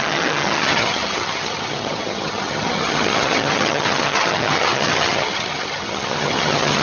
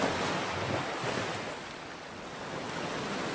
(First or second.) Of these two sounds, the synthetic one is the first